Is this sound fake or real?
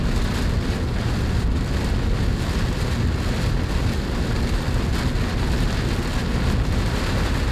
real